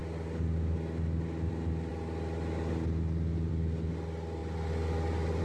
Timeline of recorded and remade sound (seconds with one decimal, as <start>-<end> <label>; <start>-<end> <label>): 0.0-5.4 recorded